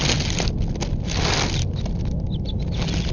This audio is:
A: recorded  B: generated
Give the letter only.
A